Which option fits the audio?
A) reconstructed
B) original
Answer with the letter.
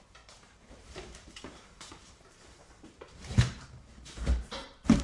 A